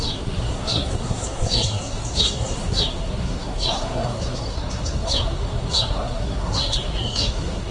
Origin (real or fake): fake